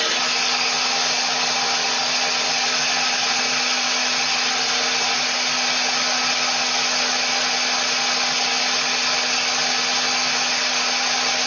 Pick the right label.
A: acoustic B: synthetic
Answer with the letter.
A